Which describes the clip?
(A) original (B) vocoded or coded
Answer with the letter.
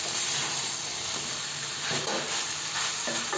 A